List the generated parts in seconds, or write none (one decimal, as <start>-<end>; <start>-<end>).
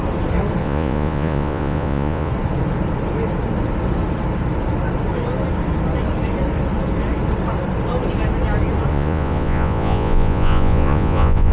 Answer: 0.6-2.3; 8.9-11.5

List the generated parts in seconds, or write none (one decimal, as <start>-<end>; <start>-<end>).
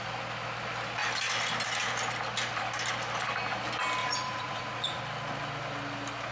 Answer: 4.0-5.0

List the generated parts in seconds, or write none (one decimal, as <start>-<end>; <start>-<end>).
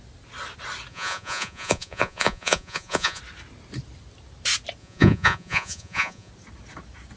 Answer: 0.9-3.2; 4.8-6.3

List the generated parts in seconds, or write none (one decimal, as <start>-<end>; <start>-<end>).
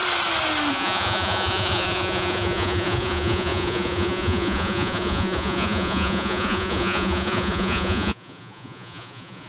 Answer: 0.7-9.5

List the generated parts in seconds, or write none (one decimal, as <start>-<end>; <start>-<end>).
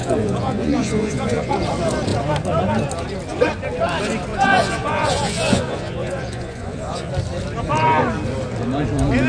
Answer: 0.0-1.6; 4.3-7.1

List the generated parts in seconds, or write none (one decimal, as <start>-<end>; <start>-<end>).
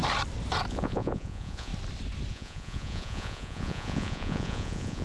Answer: 0.7-1.7; 2.3-5.0